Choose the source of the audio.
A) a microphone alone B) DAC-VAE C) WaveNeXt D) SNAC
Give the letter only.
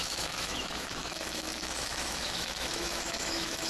B